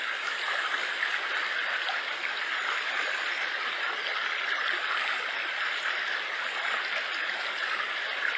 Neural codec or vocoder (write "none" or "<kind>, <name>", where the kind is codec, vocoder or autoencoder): none